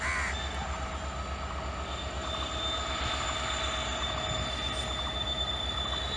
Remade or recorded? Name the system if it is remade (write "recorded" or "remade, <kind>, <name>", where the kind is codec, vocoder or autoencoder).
recorded